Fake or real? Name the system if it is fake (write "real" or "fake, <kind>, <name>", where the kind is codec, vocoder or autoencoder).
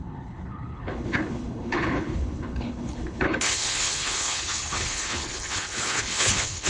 fake, codec, HILCodec